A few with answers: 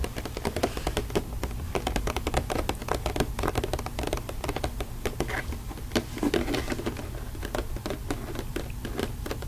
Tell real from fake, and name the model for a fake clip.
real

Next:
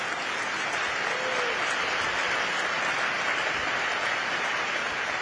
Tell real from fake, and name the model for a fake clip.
real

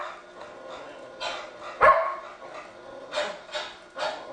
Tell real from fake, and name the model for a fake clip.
real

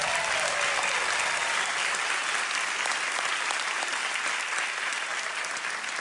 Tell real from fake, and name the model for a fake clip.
real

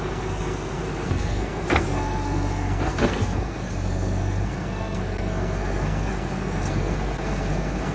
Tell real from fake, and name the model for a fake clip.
fake, codec, SNAC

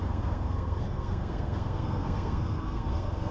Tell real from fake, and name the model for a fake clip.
fake, codec, SNAC